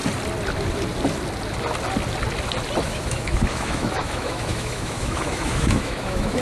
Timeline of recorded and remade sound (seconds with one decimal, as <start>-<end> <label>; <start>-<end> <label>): 0.0-2.8 recorded; 2.8-6.4 remade